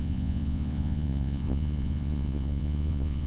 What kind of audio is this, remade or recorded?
remade